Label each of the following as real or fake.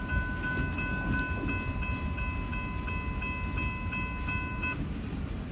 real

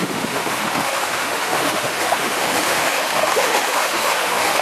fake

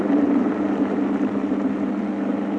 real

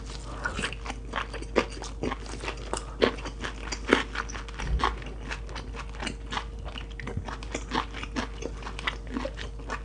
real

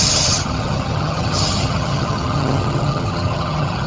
fake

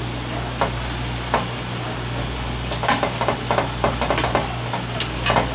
real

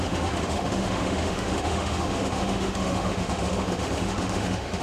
fake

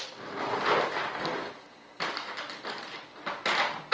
real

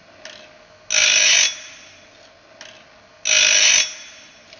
real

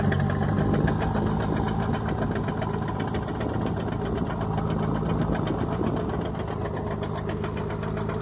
real